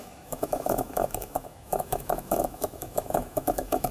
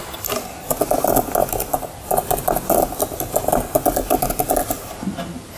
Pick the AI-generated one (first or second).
first